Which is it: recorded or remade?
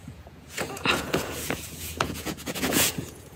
remade